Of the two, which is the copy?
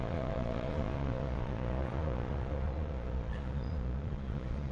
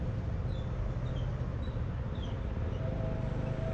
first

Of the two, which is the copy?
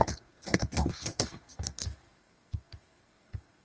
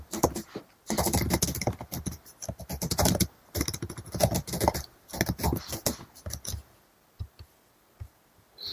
first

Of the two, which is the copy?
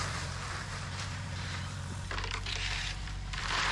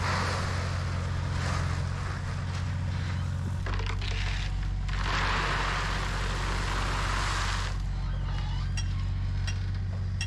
first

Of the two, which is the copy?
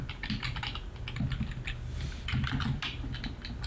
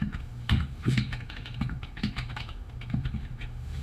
second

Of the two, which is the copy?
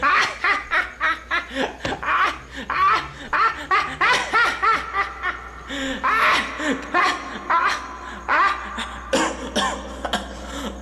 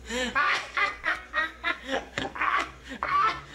second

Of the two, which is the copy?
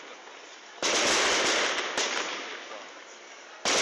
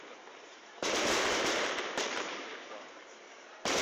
second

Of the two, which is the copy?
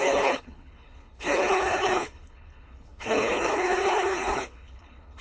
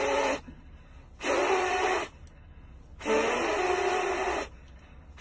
first